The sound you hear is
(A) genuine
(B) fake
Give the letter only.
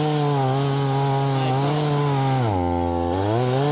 A